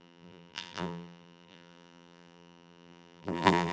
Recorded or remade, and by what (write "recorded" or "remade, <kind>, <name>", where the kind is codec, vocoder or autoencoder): remade, vocoder, BigVGAN v2